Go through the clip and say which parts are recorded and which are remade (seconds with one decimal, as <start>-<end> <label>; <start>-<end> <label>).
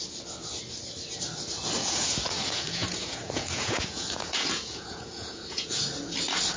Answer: 0.0-1.8 recorded; 1.8-5.8 remade; 5.8-6.6 recorded